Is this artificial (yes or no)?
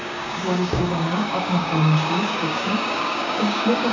yes